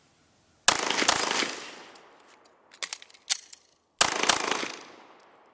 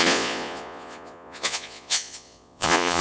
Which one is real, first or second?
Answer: first